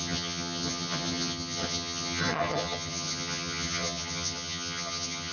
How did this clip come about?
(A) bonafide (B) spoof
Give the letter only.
B